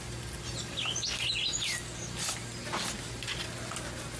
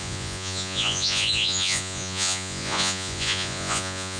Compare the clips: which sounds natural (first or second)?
first